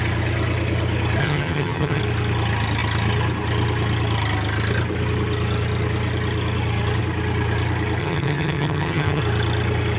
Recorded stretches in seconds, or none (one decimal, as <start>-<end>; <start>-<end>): 0.0-1.2; 2.0-8.0; 9.2-10.0